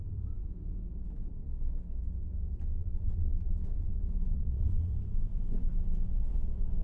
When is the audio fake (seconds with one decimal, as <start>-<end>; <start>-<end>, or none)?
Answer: 2.8-4.9